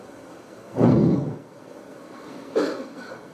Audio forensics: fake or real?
fake